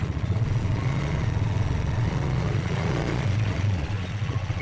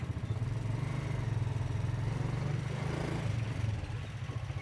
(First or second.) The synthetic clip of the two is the first